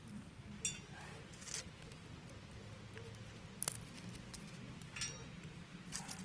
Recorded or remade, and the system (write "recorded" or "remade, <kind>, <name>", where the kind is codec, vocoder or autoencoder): recorded